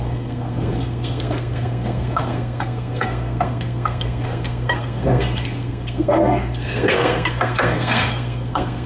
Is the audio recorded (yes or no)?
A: no